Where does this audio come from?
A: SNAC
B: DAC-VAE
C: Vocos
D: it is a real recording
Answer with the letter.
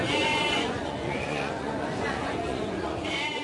C